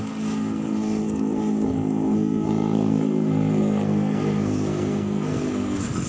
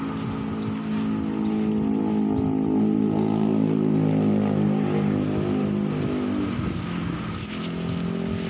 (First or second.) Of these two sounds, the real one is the second